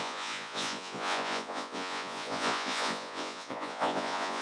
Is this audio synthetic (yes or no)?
yes